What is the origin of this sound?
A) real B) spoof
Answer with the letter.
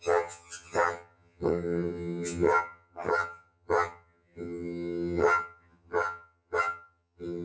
B